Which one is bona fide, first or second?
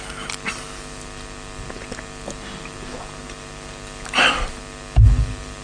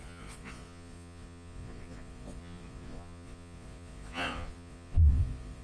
first